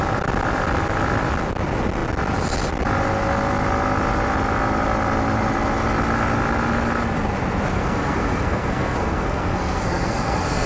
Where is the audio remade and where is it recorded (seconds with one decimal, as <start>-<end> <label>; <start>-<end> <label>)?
0.0-7.7 recorded; 7.7-10.7 remade